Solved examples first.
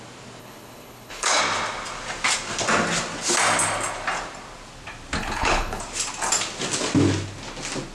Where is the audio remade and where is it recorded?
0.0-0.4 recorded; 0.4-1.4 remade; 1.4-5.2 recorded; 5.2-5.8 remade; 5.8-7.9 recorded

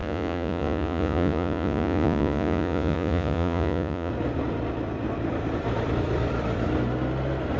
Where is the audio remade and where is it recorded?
0.0-4.1 remade; 4.1-7.6 recorded

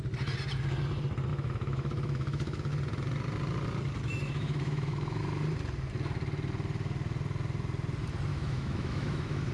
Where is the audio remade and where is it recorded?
0.0-1.3 recorded; 1.3-2.7 remade; 2.7-4.1 recorded; 4.1-5.2 remade; 5.2-8.3 recorded; 8.3-9.5 remade

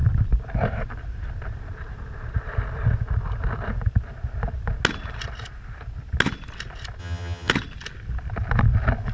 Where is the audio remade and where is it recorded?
0.0-7.0 recorded; 7.0-7.5 remade; 7.5-9.1 recorded

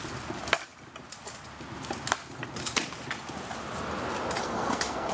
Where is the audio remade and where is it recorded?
0.0-4.4 recorded; 4.4-5.1 remade

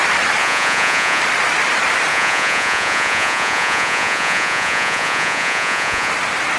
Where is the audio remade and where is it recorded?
0.0-0.4 recorded; 0.4-1.2 remade; 1.2-2.1 recorded; 2.1-6.1 remade; 6.1-6.6 recorded